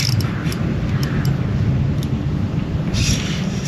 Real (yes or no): yes